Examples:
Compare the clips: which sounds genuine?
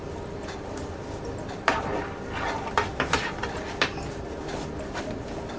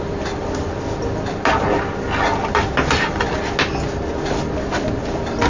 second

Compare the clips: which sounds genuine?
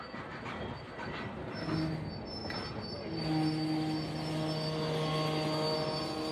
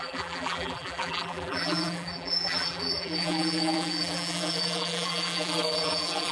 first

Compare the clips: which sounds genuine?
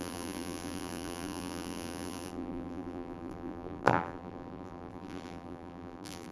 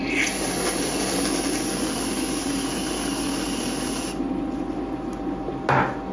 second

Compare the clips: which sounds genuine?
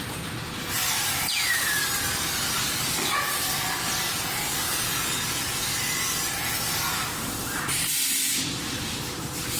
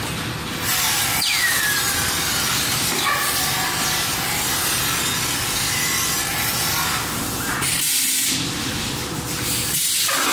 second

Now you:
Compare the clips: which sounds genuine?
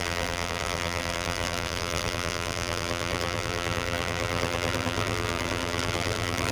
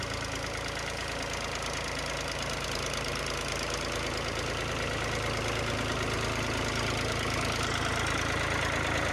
second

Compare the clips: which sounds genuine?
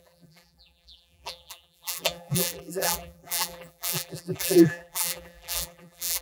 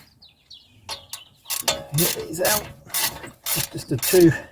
second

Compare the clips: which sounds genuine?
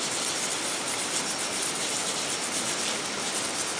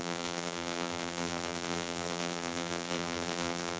first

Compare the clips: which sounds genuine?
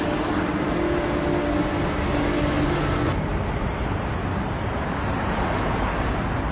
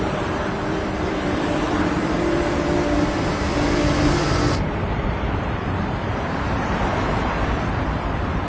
first